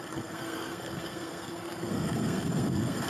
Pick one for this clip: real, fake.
fake